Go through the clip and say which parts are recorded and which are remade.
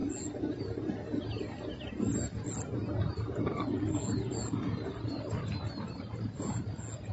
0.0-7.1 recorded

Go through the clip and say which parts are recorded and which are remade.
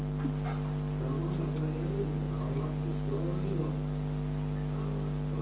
0.0-5.4 recorded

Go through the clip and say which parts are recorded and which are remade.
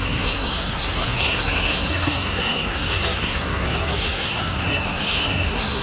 0.0-5.8 remade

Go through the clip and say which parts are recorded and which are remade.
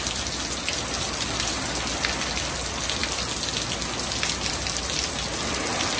0.0-6.0 recorded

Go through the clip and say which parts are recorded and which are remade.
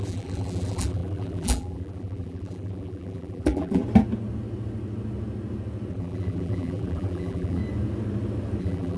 0.0-3.8 remade; 3.8-5.9 recorded; 5.9-7.6 remade; 7.6-8.6 recorded; 8.6-9.0 remade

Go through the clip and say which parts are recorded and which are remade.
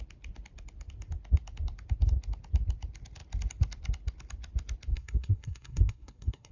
0.0-4.9 recorded; 4.9-6.5 remade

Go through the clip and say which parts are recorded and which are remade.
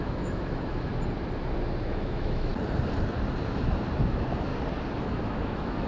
0.0-0.9 remade; 0.9-1.8 recorded; 1.8-2.5 remade; 2.5-4.0 recorded; 4.0-4.5 remade; 4.5-5.0 recorded; 5.0-5.9 remade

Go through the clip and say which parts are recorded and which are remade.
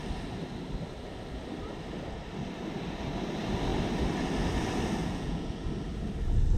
0.0-5.0 recorded; 5.0-5.7 remade; 5.7-6.6 recorded